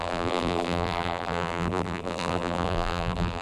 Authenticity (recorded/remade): remade